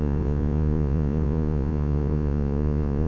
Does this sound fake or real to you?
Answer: fake